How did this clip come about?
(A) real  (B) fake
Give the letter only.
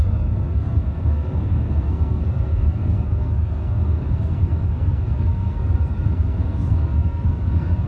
B